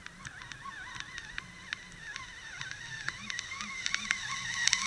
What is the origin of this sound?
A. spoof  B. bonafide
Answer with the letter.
B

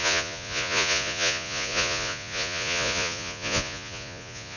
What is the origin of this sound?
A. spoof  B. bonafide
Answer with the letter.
A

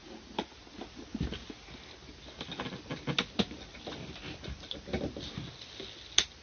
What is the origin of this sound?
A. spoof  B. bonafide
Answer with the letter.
B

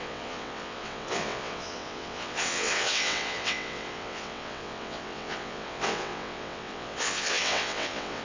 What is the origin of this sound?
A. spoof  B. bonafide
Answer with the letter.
A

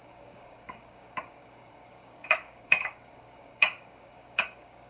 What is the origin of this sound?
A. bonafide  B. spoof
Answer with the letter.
B